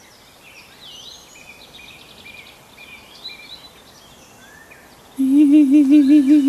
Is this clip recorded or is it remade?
recorded